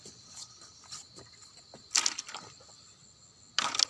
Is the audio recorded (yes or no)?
yes